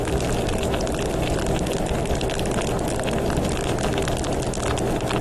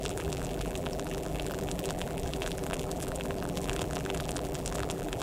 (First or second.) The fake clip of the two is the second